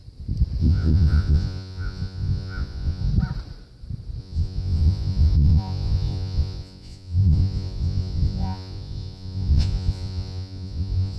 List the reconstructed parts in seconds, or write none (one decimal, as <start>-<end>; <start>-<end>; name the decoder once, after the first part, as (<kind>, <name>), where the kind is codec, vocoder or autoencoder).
0.6-3.1 (vocoder, Vocos); 4.2-11.2